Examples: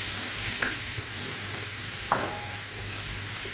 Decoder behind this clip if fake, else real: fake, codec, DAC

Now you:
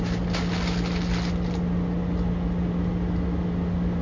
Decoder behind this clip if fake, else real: real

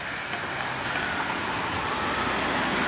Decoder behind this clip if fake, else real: real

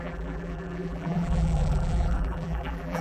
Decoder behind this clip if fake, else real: fake, vocoder, BigVGAN v2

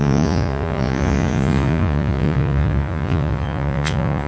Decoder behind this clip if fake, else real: fake, vocoder, Vocos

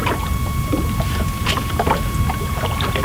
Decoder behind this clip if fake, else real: real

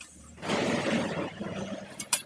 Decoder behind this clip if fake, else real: fake, vocoder, BigVGAN v2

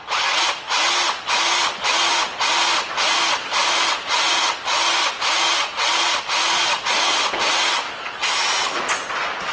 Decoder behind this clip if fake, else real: real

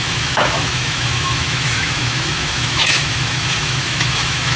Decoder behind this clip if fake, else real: fake, autoencoder, DAC-VAE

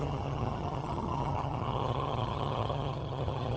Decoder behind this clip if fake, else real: fake, vocoder, HiFi-GAN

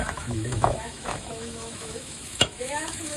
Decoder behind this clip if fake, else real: fake, autoencoder, DAC-VAE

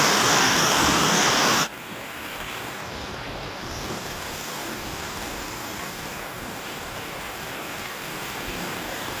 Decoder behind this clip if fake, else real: fake, codec, DAC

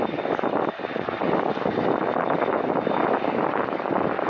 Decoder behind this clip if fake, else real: real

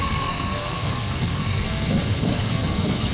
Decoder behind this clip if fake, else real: fake, codec, SNAC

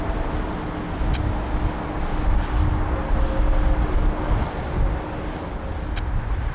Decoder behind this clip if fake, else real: real